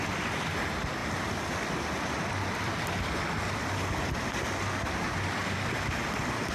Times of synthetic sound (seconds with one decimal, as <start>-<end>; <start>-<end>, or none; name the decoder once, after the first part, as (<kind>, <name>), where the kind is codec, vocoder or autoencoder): none